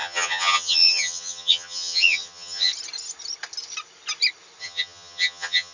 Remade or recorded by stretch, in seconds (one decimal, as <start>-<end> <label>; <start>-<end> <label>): 0.0-2.7 remade; 2.7-4.6 recorded; 4.6-5.7 remade

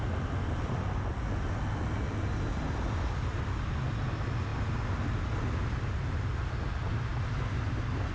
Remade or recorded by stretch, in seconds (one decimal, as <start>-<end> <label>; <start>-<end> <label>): 0.0-8.1 recorded